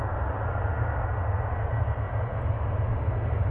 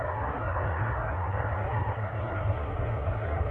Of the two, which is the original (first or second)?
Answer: first